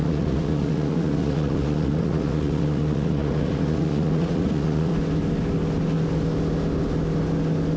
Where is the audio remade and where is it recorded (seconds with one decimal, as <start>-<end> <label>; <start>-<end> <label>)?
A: 0.0-4.9 remade; 4.9-7.8 recorded